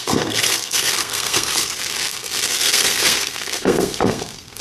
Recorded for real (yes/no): no